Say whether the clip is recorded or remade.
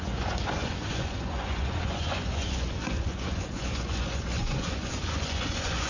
remade